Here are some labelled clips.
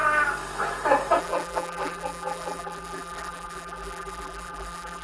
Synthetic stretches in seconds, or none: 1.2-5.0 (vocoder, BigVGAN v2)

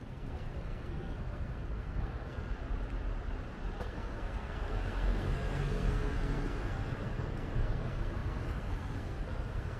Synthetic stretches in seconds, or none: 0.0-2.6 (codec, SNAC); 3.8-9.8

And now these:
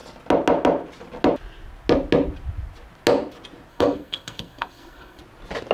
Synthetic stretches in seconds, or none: 3.7-5.2 (codec, SNAC)

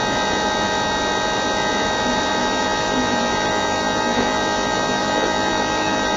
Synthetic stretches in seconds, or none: 2.4-6.2 (vocoder, BigVGAN v2)

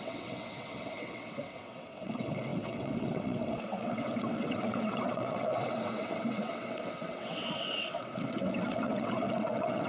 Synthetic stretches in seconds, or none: 0.0-9.9 (vocoder, WaveNeXt)

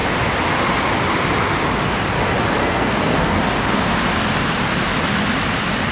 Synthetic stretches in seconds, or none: 2.6-3.4 (codec, SNAC)